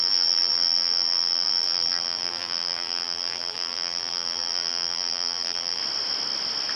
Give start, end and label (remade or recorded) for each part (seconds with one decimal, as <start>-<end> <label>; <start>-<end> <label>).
0.0-5.8 remade; 5.8-6.8 recorded